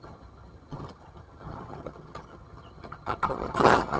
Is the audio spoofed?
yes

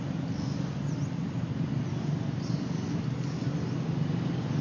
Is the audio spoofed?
no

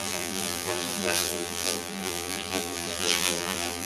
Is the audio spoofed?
yes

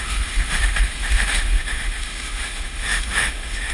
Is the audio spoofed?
yes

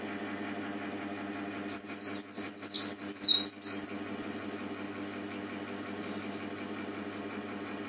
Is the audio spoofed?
no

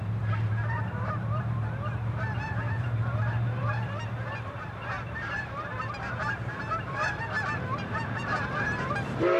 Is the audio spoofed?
yes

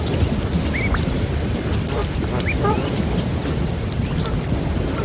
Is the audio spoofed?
no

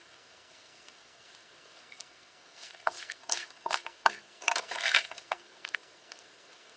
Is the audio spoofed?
yes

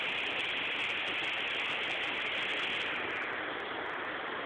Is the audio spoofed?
no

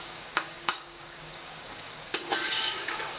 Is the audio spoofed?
yes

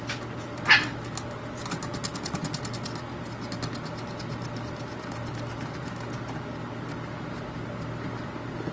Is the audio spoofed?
no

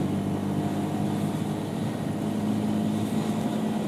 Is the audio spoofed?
no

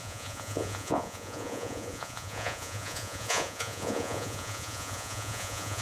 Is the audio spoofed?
yes